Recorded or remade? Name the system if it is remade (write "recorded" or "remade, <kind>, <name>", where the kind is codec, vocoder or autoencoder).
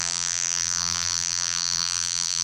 remade, vocoder, BigVGAN v2